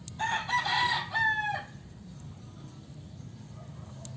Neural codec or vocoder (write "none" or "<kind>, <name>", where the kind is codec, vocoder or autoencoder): none